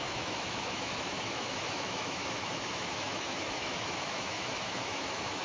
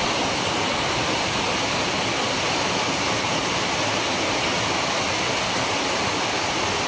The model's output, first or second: first